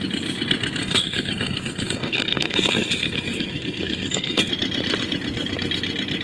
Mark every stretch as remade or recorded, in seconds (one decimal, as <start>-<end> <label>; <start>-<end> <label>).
0.0-0.8 recorded; 0.8-4.5 remade; 4.5-6.2 recorded